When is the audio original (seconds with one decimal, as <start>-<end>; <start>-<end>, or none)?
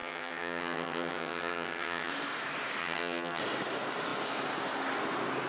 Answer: 2.1-2.8; 3.4-5.5